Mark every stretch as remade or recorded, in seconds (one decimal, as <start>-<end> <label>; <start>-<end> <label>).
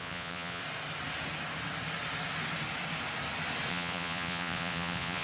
0.0-0.6 remade; 0.6-3.7 recorded; 3.7-5.2 remade